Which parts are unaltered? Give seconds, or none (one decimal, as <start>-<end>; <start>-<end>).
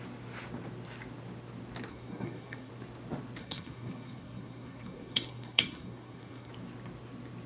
0.0-1.9; 2.7-3.4; 6.5-7.5